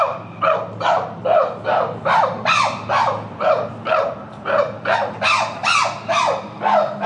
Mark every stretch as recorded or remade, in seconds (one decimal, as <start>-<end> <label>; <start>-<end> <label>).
0.0-1.2 remade; 1.2-2.9 recorded; 2.9-5.6 remade; 5.6-7.1 recorded